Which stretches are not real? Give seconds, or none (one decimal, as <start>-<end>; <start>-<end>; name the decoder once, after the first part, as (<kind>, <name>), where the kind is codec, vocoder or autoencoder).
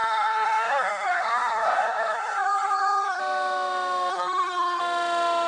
0.0-3.2 (codec, SNAC); 4.1-4.8